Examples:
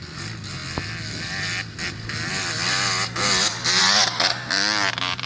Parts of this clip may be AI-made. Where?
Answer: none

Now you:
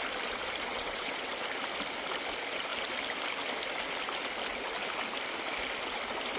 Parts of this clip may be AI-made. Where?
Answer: 0.7-1.3 (vocoder, WaveNeXt)